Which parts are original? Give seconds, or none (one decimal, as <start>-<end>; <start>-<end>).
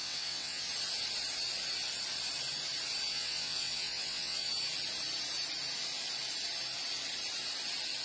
0.7-3.1; 4.5-8.0